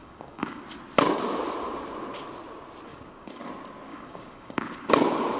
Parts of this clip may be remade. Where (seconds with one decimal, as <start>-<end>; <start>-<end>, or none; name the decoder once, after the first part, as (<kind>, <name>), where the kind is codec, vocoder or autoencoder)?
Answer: 0.0-0.6 (codec, DAC); 2.9-3.5; 3.9-4.9